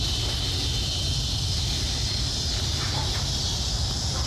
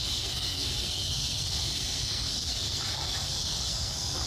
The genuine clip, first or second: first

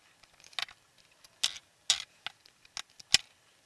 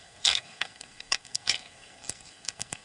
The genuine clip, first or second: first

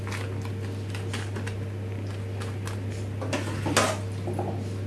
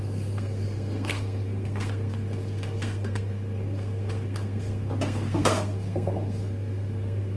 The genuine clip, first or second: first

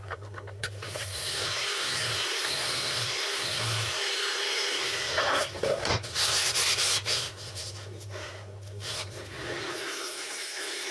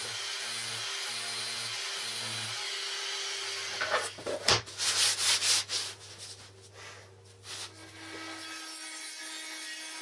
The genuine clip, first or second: second